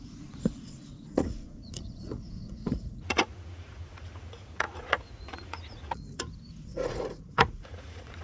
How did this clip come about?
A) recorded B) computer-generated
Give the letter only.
B